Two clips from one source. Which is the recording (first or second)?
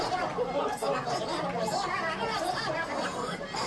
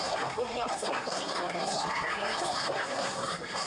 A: first